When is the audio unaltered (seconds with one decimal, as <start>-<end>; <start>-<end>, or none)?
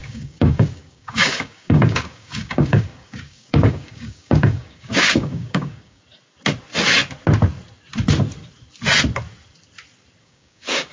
6.0-10.2